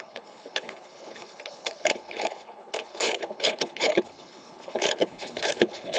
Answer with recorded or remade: remade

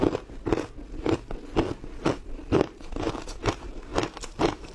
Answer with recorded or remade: recorded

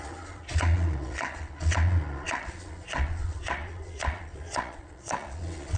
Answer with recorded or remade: remade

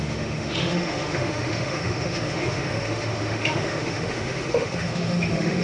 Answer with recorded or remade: remade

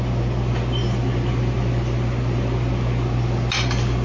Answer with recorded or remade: recorded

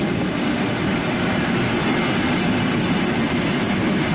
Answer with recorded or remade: recorded